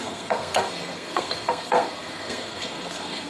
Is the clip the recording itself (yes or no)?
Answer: no